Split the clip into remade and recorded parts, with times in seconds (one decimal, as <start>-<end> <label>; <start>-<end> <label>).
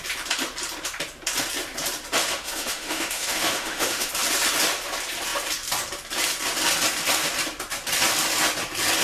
0.0-2.2 recorded; 2.2-4.1 remade; 4.1-9.0 recorded